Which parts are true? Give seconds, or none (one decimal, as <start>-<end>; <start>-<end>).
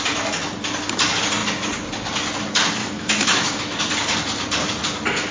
0.0-2.8; 3.8-5.3